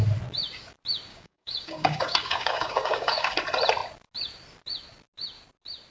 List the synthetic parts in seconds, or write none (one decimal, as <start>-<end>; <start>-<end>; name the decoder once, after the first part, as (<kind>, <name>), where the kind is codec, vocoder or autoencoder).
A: 1.1-3.3 (codec, DAC)